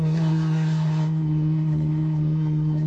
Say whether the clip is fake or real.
fake